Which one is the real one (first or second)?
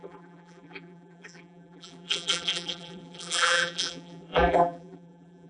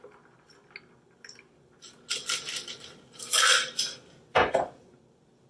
second